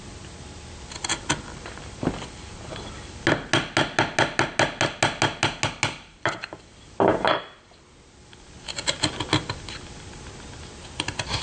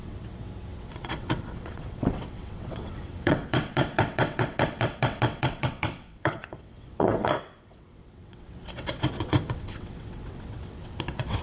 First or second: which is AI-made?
second